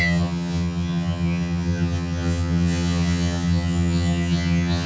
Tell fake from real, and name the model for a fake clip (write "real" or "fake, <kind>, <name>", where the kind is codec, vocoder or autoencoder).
fake, vocoder, HiFi-GAN